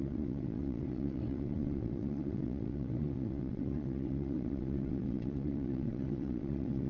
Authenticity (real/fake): fake